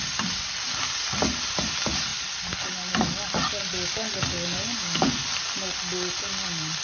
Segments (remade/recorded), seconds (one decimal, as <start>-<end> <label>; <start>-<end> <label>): 0.0-6.8 recorded